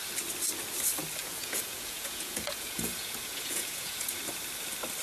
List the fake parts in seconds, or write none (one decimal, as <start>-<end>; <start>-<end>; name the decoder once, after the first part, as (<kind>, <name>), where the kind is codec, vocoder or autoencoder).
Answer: 1.2-4.2 (vocoder, Vocos)